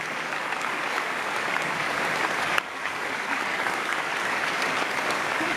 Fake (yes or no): yes